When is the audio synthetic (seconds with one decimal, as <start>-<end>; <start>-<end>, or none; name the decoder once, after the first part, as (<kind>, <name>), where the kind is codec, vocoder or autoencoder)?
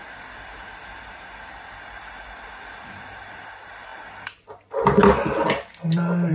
none